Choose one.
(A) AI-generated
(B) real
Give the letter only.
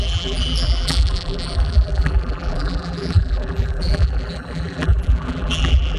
A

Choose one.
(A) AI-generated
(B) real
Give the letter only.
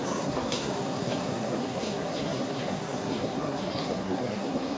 A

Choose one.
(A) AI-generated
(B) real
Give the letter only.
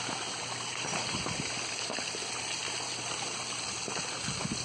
B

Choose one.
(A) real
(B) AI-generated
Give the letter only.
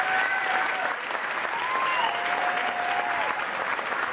A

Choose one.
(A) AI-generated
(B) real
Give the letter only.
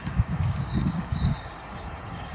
A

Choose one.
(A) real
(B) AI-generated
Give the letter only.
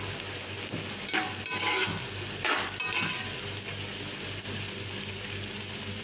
A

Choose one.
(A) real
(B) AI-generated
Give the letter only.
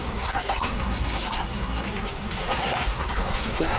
B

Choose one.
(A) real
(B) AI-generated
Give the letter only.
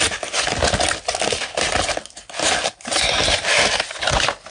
A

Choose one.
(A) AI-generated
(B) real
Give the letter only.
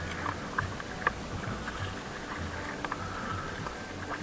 B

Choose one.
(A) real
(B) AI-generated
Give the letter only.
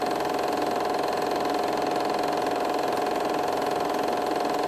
A